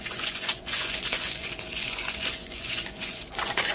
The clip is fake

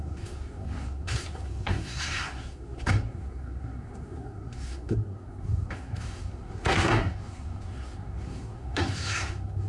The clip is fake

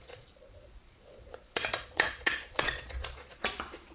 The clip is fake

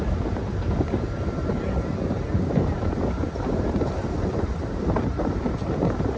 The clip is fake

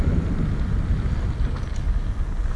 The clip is real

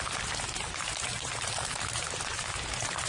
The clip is fake